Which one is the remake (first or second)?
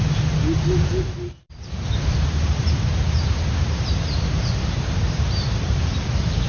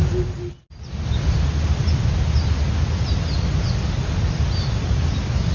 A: first